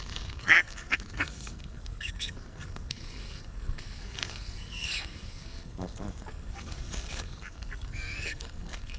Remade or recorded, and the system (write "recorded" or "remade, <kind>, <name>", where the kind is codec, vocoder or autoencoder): remade, codec, SNAC